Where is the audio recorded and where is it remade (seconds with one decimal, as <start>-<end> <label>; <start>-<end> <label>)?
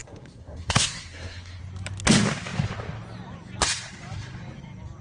0.0-1.6 remade; 1.6-5.0 recorded